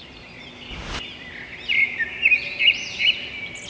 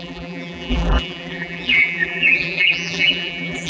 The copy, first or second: second